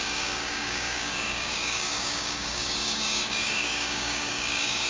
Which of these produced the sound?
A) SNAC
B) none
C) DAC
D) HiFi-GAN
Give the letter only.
C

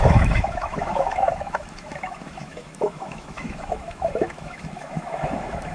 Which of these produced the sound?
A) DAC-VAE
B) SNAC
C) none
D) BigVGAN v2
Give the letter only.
A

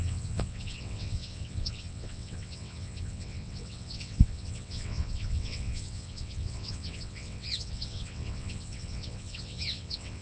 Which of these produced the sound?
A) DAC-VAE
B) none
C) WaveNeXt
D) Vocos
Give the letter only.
C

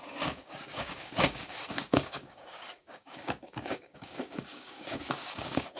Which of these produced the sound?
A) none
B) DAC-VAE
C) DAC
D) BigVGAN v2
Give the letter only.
C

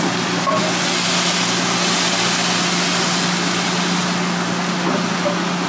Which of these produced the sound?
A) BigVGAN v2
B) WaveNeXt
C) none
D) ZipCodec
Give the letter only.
C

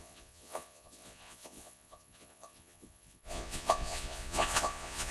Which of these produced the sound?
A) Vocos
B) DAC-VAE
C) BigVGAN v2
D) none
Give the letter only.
A